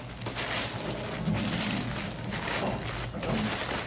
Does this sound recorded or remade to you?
recorded